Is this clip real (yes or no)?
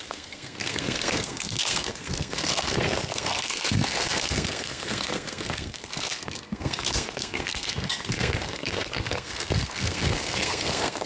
no